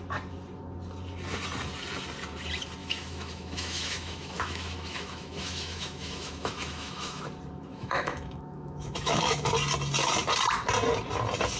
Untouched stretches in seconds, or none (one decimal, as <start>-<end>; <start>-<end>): 0.0-2.8; 7.2-7.7; 9.5-11.6